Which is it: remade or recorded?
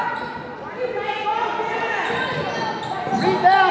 recorded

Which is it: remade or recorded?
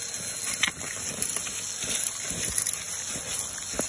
recorded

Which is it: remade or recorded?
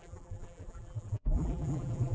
remade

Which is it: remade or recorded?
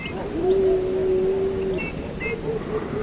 recorded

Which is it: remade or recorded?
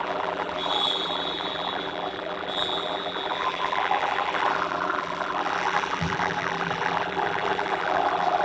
remade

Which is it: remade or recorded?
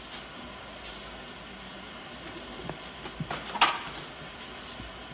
recorded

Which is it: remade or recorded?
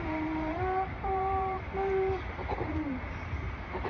remade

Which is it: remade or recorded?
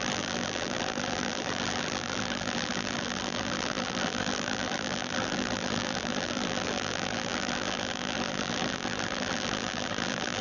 remade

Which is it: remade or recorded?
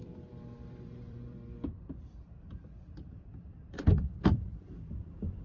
remade